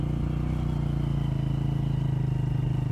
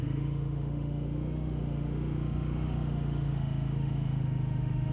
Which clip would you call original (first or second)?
first